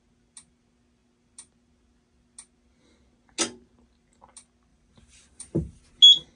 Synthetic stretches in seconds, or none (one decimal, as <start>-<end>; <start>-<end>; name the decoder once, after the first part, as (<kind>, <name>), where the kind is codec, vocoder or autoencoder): 4.7-5.8 (vocoder, BigVGAN v2)